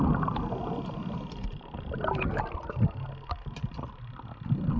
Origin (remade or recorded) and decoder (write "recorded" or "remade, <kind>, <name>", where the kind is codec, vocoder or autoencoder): recorded